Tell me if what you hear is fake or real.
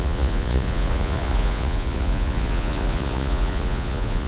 fake